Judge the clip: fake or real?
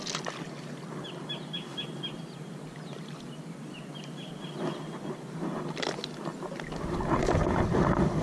real